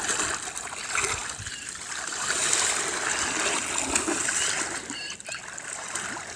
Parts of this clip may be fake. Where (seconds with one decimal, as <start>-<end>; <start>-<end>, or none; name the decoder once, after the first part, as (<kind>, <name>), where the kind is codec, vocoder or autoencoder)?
none